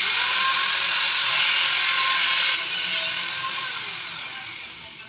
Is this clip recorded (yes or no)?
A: yes